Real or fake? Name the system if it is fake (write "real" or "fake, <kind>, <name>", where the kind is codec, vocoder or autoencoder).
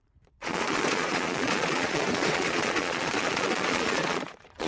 fake, vocoder, Vocos